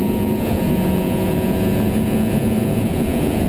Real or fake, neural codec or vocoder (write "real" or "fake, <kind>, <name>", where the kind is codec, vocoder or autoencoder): fake, vocoder, Vocos